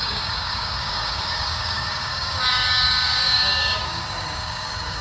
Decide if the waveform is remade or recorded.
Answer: remade